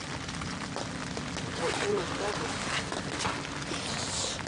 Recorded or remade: recorded